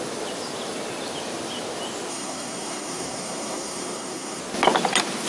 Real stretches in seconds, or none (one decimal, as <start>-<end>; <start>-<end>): 0.0-2.1; 4.4-5.3